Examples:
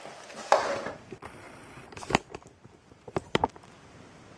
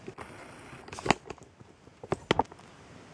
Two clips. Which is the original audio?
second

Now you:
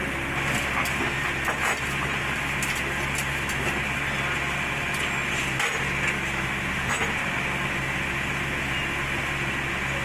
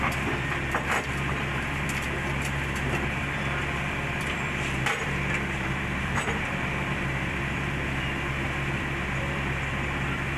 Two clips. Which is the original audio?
first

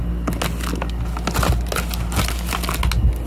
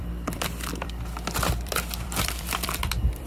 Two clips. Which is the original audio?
first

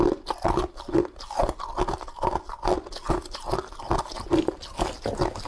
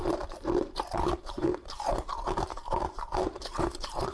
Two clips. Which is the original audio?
first